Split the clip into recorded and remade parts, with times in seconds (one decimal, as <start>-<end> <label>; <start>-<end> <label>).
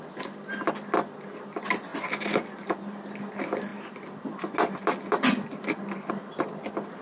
0.0-7.0 recorded